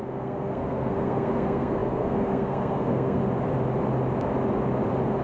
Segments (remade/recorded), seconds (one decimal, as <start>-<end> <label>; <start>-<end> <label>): 0.0-3.2 remade; 3.2-5.2 recorded

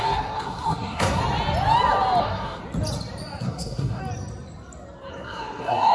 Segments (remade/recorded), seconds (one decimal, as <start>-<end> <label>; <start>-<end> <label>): 0.0-1.2 remade; 1.2-2.2 recorded; 2.2-2.6 remade; 2.6-3.4 recorded; 3.4-4.0 remade; 4.0-5.1 recorded; 5.1-5.9 remade

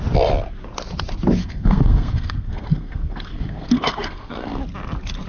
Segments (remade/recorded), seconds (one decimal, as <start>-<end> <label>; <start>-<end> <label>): 0.0-1.4 recorded; 1.4-4.6 remade; 4.6-5.3 recorded

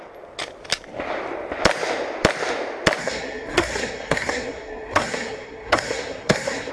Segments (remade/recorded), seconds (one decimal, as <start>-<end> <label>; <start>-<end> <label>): 0.0-3.0 recorded; 3.0-6.7 remade

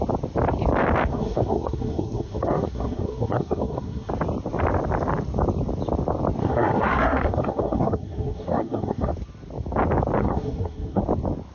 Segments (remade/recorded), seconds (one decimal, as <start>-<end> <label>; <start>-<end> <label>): 0.0-1.1 recorded; 1.1-4.1 remade; 4.1-6.4 recorded; 6.4-9.1 remade; 9.1-10.2 recorded; 10.2-11.0 remade; 11.0-11.5 recorded